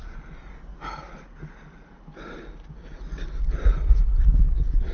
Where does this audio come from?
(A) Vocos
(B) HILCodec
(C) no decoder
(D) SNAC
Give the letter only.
C